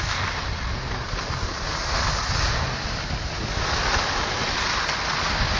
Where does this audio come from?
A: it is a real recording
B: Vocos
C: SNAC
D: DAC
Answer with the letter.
A